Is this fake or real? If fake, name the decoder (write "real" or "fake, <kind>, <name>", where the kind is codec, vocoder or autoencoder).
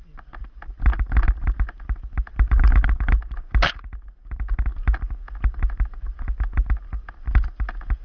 real